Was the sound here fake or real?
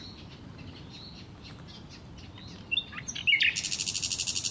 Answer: real